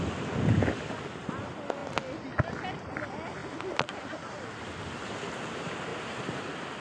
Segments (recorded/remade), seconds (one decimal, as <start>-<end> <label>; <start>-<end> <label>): 0.0-6.8 recorded